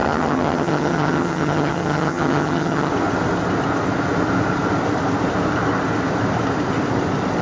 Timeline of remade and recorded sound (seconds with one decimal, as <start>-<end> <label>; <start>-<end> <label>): 0.0-2.9 remade; 2.9-7.4 recorded